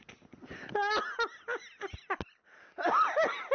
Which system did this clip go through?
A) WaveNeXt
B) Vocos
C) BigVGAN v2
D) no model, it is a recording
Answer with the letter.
D